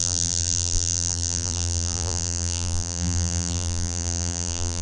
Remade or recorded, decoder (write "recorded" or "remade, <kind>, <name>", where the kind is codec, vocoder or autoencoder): remade, vocoder, BigVGAN v2